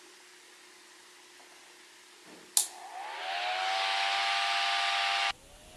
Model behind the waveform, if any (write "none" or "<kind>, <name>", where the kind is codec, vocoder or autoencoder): none